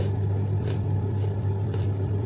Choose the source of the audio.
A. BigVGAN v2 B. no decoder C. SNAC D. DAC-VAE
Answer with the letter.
A